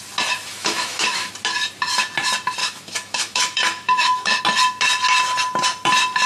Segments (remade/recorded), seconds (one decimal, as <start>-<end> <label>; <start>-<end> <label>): 0.0-0.5 recorded; 0.5-1.3 remade; 1.3-2.6 recorded; 2.6-4.4 remade; 4.4-6.3 recorded